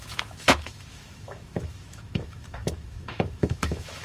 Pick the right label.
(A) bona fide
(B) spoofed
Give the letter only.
B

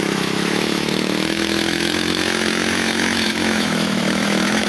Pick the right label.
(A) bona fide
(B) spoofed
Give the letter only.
B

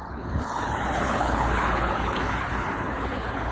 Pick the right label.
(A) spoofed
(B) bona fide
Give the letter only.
A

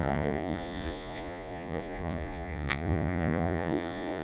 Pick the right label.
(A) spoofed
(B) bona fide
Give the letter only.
A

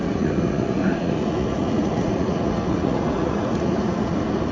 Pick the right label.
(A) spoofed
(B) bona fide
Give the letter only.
A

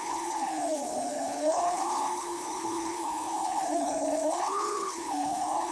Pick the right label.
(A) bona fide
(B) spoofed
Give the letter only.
B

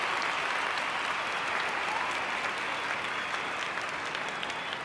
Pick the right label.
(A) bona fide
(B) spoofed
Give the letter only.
A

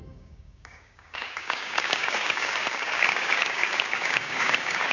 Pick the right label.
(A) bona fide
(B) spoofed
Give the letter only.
B